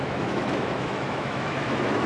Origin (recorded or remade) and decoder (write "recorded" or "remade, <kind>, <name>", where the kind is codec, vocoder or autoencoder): remade, autoencoder, DAC-VAE